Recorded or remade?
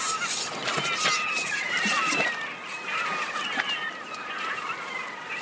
recorded